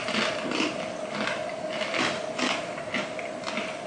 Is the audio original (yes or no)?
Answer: yes